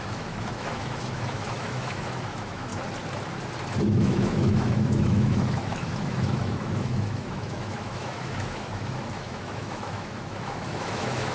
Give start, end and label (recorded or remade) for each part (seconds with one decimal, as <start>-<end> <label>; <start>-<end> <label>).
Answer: 0.0-2.7 remade; 2.7-3.8 recorded; 3.8-11.3 remade